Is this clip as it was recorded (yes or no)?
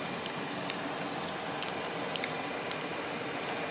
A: yes